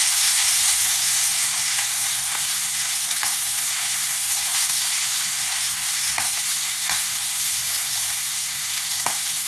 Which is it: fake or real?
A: fake